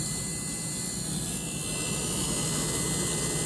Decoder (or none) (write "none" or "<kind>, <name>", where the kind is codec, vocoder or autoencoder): none